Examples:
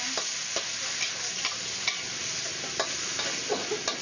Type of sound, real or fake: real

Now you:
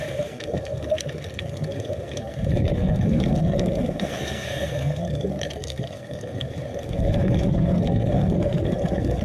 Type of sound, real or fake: fake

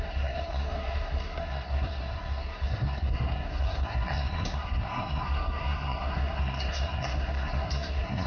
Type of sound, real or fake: fake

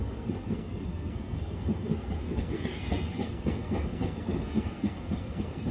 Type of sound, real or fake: fake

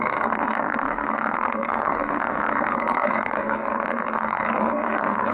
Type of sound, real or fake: fake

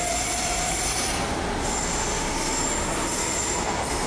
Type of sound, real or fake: real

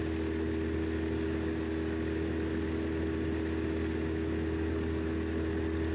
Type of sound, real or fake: real